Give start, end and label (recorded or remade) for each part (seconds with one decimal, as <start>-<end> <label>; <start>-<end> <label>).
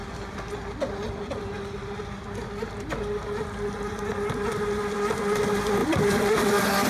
0.0-5.8 recorded; 5.8-6.5 remade; 6.5-6.9 recorded